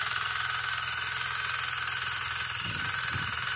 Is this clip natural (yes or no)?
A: yes